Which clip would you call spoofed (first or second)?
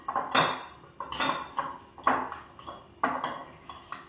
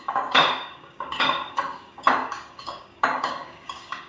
second